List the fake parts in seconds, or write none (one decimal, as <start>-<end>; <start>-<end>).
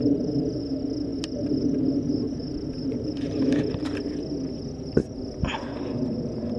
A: none